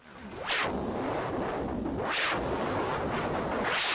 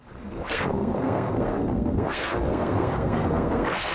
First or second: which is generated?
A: second